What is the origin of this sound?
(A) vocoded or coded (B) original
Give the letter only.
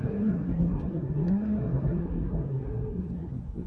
A